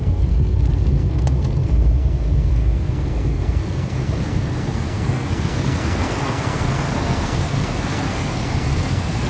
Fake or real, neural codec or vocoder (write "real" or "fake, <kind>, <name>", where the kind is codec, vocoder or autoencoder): fake, codec, SNAC